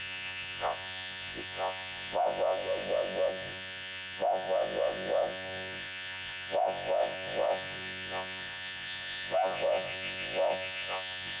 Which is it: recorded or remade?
remade